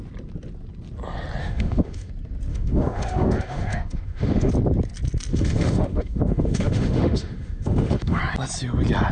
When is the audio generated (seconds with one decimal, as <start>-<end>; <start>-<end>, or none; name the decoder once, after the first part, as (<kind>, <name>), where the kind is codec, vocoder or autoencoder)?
1.4-2.1 (autoencoder, DAC-VAE); 2.5-4.5; 5.3-8.2